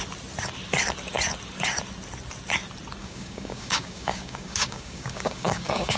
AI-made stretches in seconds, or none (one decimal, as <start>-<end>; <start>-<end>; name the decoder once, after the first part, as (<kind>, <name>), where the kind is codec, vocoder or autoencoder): 3.0-6.0 (codec, DAC)